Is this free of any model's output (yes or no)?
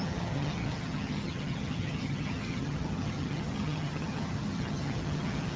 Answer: no